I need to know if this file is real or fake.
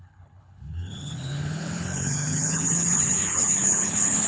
fake